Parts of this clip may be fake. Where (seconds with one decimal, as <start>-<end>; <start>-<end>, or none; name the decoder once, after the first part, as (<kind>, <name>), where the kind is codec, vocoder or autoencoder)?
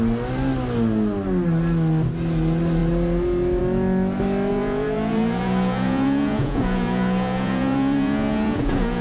4.5-9.0 (vocoder, Vocos)